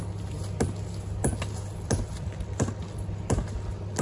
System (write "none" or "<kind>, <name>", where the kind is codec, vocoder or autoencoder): none